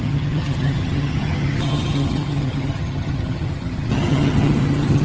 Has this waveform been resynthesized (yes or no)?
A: yes